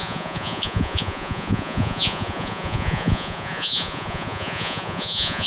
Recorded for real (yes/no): no